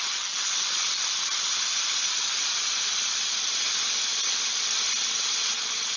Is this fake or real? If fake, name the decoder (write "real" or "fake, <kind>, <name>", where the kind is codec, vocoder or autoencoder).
real